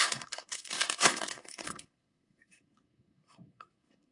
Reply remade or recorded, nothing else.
remade